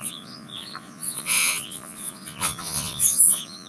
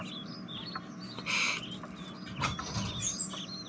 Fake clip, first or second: first